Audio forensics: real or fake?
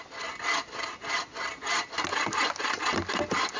real